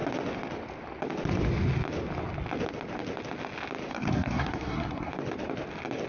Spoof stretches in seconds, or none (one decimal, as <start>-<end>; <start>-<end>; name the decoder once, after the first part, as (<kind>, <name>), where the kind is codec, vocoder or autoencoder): 3.9-5.1 (codec, SNAC)